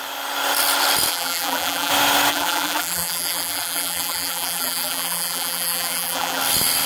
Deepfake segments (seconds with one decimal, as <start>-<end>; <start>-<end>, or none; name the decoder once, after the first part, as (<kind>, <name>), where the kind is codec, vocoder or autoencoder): 1.1-1.9 (vocoder, BigVGAN v2); 2.3-6.4